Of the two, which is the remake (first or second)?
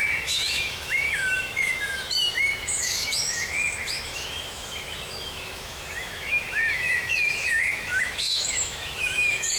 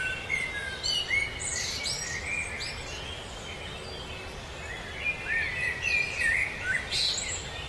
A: first